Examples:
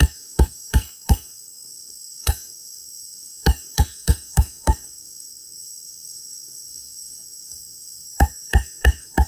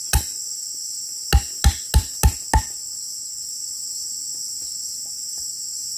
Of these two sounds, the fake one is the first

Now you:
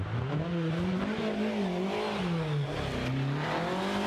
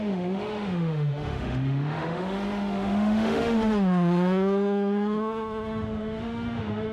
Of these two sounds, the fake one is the second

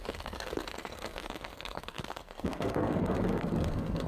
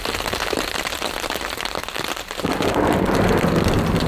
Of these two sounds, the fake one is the first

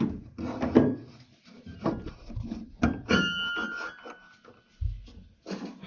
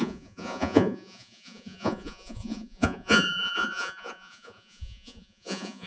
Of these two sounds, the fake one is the second